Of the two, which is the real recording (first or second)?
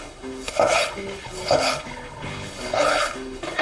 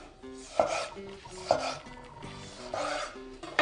second